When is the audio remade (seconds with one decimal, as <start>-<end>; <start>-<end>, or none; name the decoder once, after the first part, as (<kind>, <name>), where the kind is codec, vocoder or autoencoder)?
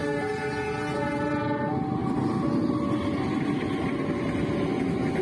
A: none